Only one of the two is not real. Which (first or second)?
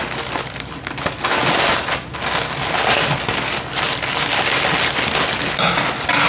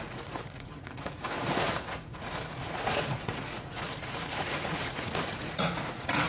second